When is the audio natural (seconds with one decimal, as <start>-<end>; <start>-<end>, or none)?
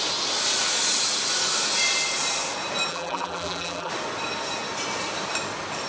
0.0-2.9; 3.9-5.9